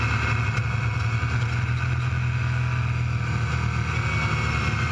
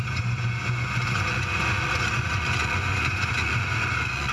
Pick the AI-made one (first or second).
second